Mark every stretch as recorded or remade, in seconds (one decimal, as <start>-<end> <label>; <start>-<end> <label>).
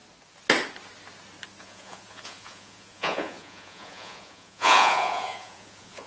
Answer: 0.0-1.6 recorded; 1.6-6.1 remade